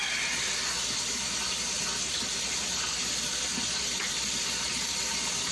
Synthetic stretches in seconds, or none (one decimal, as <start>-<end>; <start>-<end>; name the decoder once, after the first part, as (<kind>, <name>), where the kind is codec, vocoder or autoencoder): 2.1-5.5 (vocoder, BigVGAN v2)